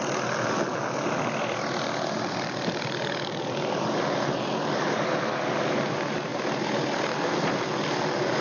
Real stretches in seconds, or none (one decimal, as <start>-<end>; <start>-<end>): 0.0-8.4